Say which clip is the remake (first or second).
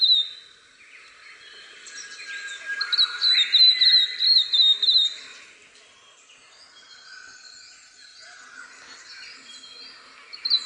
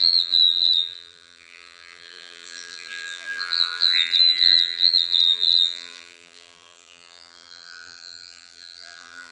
second